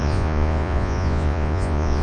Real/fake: fake